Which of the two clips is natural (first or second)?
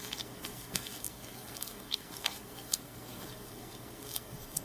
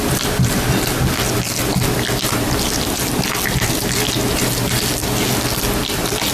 second